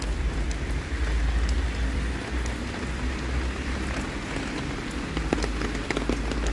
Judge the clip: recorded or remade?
recorded